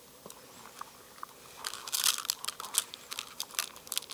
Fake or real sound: real